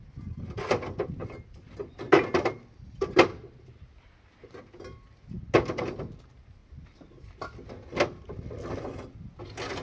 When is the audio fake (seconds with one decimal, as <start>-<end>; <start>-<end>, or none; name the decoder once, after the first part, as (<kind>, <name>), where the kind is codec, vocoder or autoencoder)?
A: none